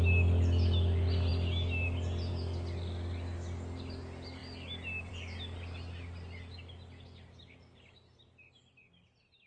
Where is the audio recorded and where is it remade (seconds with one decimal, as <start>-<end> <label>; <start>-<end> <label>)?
0.0-9.5 recorded